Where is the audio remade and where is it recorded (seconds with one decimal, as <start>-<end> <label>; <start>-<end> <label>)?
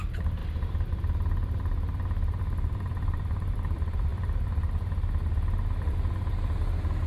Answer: 0.0-0.4 remade; 0.4-2.4 recorded; 2.4-4.1 remade; 4.1-7.1 recorded